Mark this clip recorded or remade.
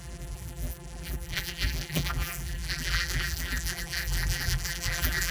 remade